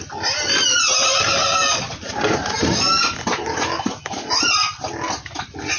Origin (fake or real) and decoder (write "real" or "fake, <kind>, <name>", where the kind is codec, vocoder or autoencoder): real